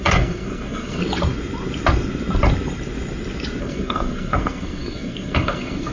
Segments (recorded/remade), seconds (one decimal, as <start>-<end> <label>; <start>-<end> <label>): 0.0-1.0 remade; 1.0-3.6 recorded; 3.6-5.9 remade